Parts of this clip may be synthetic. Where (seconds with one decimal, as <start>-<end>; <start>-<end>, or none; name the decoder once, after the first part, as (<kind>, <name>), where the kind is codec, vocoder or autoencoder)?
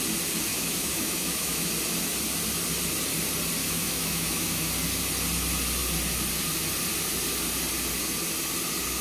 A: 0.5-1.7 (autoencoder, DAC-VAE); 3.6-4.7